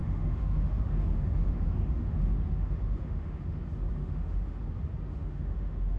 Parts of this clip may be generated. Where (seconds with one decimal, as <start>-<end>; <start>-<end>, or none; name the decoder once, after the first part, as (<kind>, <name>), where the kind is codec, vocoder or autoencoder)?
0.0-3.6 (autoencoder, DAC-VAE); 4.0-4.6; 5.1-6.0

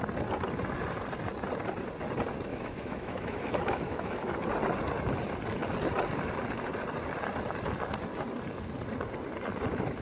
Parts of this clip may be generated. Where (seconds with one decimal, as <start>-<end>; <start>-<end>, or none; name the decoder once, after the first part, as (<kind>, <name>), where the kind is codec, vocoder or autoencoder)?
2.5-4.3 (autoencoder, DAC-VAE)

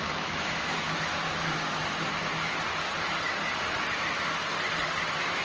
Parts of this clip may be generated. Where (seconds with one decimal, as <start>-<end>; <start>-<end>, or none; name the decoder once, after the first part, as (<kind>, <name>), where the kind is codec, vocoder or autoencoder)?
0.0-1.8 (autoencoder, DAC-VAE); 5.0-5.4